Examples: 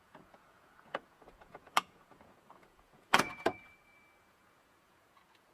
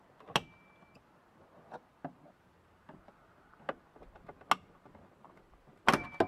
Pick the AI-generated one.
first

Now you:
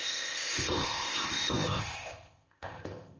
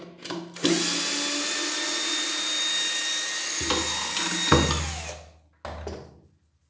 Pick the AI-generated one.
first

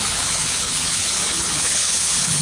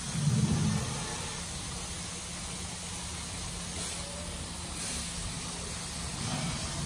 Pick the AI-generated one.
first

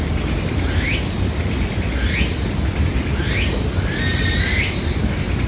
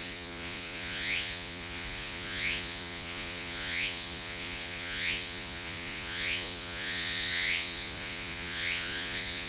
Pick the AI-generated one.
second